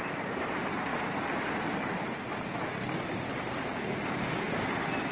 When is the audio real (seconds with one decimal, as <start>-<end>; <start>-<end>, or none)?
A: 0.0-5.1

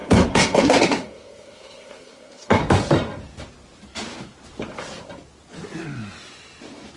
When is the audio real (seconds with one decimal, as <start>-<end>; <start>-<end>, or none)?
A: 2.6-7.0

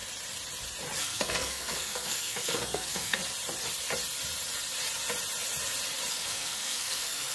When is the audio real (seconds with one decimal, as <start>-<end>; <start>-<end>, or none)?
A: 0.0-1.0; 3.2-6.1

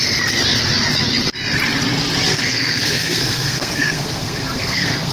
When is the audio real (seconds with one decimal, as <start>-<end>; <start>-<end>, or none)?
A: 0.0-2.3

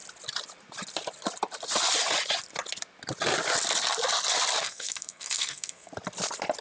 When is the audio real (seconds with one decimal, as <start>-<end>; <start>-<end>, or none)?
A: 0.0-4.6; 5.9-6.6

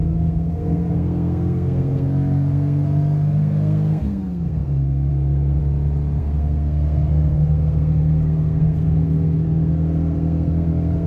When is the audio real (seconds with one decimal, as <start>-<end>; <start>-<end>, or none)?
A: 5.6-6.2